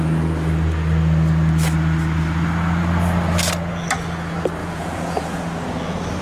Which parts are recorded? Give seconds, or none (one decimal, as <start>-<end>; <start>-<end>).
0.0-4.6; 5.4-6.2